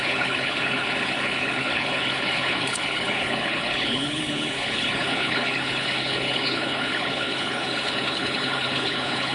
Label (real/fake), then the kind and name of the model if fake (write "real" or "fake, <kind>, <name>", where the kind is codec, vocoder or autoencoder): fake, codec, HILCodec